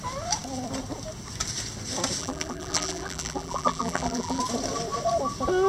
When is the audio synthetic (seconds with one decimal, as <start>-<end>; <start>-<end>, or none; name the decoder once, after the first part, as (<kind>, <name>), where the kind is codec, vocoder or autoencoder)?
2.2-4.4 (vocoder, BigVGAN v2)